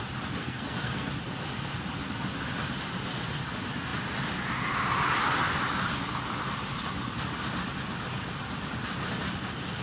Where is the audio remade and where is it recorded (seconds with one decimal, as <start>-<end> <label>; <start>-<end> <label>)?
0.0-0.4 recorded; 0.4-1.1 remade; 1.1-9.8 recorded